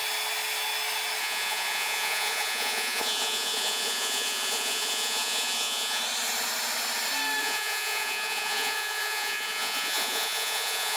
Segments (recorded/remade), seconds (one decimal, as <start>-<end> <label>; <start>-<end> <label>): 0.0-1.2 recorded; 1.2-6.0 remade; 6.0-7.4 recorded; 7.4-11.0 remade